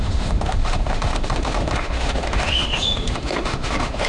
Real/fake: fake